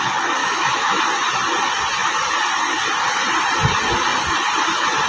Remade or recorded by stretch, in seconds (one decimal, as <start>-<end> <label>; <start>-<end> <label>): 0.0-0.4 recorded; 0.4-1.0 remade; 1.0-5.1 recorded